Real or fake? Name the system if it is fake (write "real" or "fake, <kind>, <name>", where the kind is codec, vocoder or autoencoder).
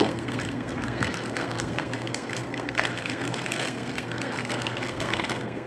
fake, codec, SNAC